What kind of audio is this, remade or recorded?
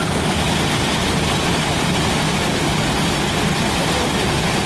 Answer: recorded